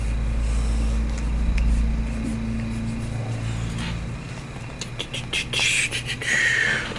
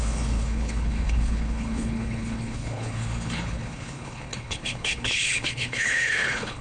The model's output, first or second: second